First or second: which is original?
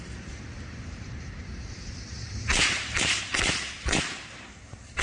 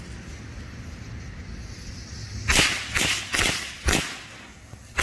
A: second